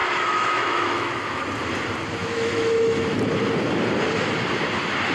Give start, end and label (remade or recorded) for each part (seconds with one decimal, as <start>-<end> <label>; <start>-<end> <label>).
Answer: 0.0-1.4 remade; 1.4-2.2 recorded; 2.2-3.2 remade; 3.2-5.1 recorded

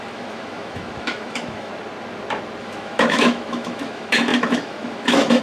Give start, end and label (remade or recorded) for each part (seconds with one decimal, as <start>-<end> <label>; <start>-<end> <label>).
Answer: 0.0-1.7 remade; 1.7-2.6 recorded; 2.6-5.4 remade